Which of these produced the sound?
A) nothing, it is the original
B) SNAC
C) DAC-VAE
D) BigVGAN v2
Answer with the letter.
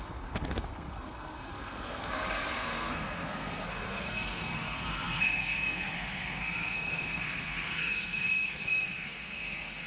B